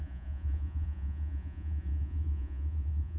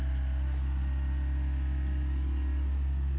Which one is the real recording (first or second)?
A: second